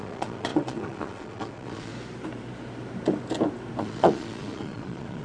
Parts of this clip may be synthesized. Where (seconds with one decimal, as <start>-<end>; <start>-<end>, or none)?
0.0-1.9; 3.8-5.2

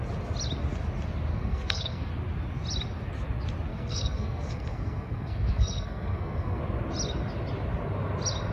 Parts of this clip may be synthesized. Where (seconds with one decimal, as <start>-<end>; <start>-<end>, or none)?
1.3-2.1; 3.7-6.6

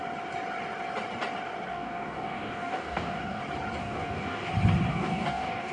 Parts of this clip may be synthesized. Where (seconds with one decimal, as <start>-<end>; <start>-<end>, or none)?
1.7-3.4; 3.8-4.5; 4.9-5.7

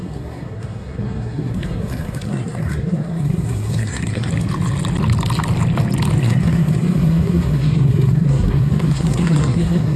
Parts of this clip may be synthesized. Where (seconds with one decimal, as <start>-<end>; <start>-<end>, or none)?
0.0-4.3; 6.2-10.0